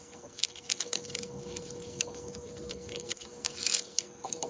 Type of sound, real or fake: fake